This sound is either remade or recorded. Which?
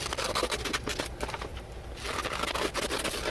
recorded